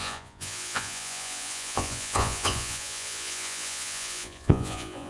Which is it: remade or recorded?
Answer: remade